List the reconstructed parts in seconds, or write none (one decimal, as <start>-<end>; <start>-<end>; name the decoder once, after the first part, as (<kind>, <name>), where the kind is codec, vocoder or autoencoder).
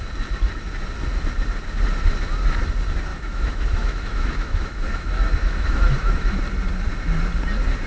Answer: 3.1-6.4 (autoencoder, DAC-VAE)